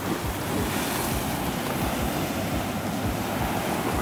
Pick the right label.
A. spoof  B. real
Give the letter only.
B